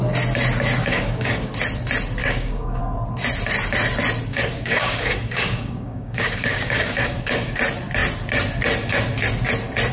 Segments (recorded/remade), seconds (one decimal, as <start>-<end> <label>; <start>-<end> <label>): 0.0-0.8 recorded; 0.8-1.5 remade; 1.5-2.2 recorded; 2.2-2.8 remade; 2.8-4.3 recorded; 4.3-7.5 remade; 7.5-9.9 recorded